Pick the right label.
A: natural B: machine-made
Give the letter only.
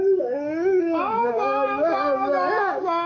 B